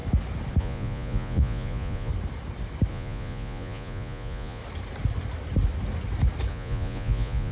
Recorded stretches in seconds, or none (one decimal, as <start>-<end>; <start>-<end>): 0.0-0.6; 2.1-2.9; 4.6-6.5